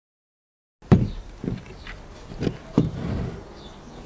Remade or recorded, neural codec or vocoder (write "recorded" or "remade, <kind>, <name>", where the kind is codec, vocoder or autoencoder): recorded